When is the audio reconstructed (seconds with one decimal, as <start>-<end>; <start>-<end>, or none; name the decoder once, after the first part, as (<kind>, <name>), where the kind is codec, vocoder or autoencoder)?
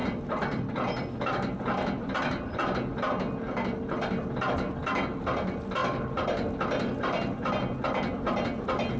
none